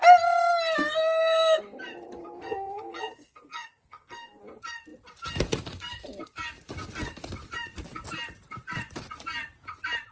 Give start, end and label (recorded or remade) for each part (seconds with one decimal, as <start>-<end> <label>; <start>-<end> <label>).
0.0-0.8 recorded; 0.8-1.6 remade; 1.6-2.2 recorded; 2.2-4.4 remade; 4.4-10.1 recorded